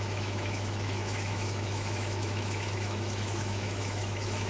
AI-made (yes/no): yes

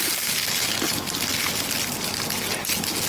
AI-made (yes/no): no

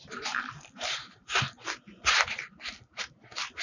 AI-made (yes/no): no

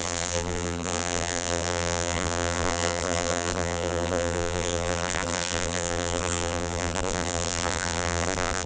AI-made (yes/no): yes